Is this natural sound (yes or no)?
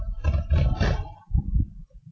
yes